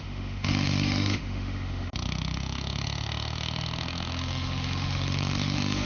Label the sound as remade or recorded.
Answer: remade